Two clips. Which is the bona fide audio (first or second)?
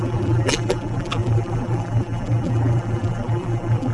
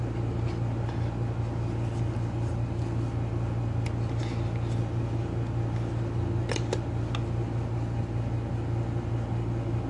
second